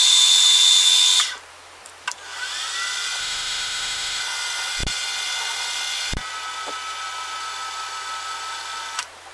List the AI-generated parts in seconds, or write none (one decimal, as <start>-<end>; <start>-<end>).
3.2-4.2